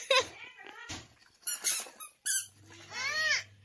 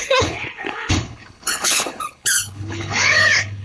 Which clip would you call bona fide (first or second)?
first